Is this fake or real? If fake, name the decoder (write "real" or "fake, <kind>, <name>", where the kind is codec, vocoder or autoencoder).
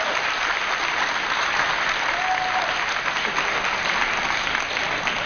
real